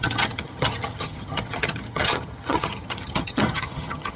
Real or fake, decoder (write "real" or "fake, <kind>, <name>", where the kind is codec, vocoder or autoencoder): fake, vocoder, HiFi-GAN